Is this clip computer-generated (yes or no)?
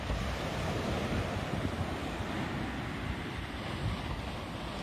no